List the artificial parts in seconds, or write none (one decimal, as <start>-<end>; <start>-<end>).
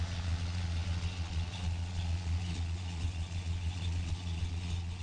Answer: 0.0-5.0